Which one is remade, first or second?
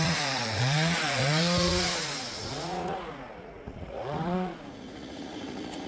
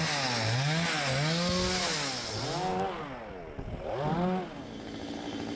first